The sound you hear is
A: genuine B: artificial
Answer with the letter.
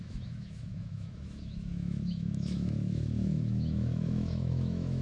B